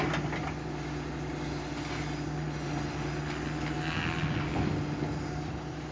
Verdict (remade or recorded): recorded